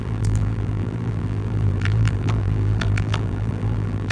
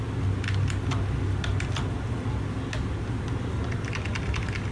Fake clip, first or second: first